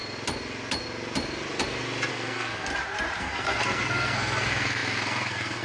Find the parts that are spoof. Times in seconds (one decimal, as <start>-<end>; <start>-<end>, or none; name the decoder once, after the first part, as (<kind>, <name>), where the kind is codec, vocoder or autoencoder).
2.1-2.7 (codec, SNAC); 3.2-5.6